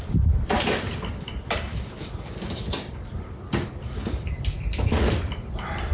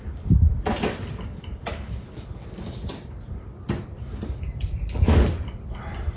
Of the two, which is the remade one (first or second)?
first